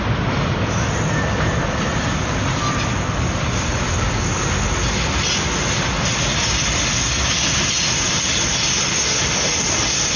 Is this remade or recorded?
recorded